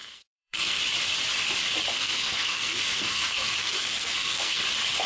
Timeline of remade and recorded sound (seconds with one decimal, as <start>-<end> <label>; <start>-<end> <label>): 0.0-0.8 remade; 0.8-1.9 recorded; 1.9-4.6 remade; 4.6-5.1 recorded